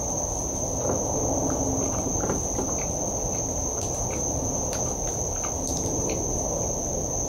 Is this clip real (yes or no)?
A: yes